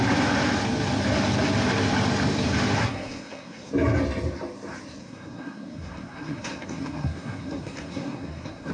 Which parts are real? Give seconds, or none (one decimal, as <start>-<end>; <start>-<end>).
0.0-2.8; 3.7-5.0